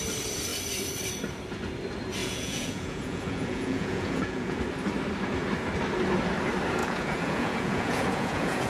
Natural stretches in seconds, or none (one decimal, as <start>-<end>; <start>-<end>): 0.0-2.2; 4.6-6.8